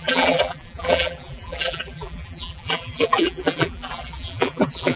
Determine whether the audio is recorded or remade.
remade